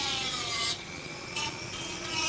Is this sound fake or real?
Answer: fake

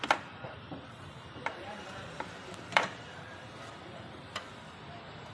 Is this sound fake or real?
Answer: fake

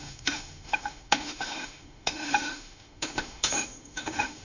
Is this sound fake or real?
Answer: fake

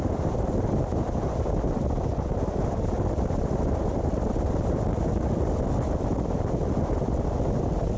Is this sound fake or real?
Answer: real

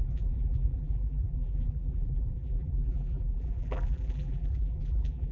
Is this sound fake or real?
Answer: fake